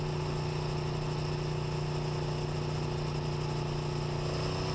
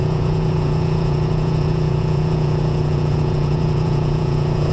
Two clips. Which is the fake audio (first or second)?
second